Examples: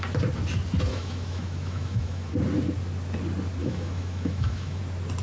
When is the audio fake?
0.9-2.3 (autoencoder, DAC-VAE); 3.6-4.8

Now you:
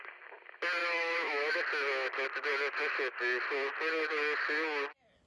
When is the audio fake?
0.8-1.6 (autoencoder, DAC-VAE)

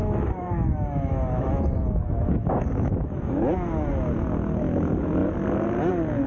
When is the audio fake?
0.0-3.4 (autoencoder, DAC-VAE)

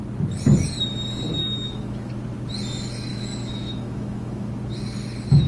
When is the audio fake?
1.4-2.1 (autoencoder, DAC-VAE); 3.1-4.5